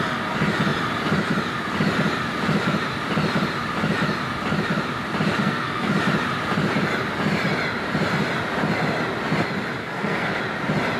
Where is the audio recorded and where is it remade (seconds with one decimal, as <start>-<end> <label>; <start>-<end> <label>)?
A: 0.0-5.4 recorded; 5.4-5.9 remade; 5.9-9.8 recorded; 9.8-10.4 remade; 10.4-11.0 recorded

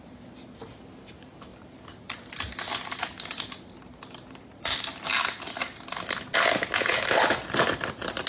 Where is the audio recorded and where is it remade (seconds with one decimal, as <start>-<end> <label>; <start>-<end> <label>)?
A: 0.0-8.3 recorded

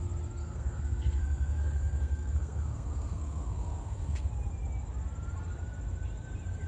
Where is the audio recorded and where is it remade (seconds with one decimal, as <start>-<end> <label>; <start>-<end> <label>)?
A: 0.0-0.4 recorded; 0.4-4.3 remade; 4.3-6.7 recorded

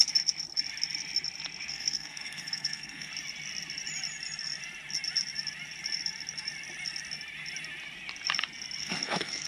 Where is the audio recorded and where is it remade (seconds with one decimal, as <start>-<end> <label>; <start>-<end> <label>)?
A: 0.0-1.7 recorded; 1.7-3.1 remade; 3.1-8.8 recorded; 8.8-9.5 remade

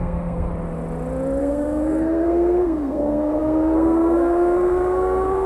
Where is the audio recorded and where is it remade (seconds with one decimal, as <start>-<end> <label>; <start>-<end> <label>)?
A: 0.0-0.5 remade; 0.5-1.4 recorded; 1.4-5.5 remade

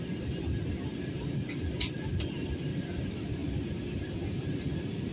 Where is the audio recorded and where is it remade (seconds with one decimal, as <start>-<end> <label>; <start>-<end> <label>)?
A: 0.0-0.9 remade; 0.9-2.8 recorded; 2.8-3.4 remade; 3.4-4.0 recorded; 4.0-5.1 remade